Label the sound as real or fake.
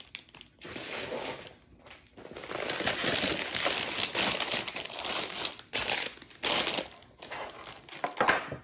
real